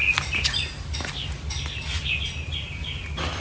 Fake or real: real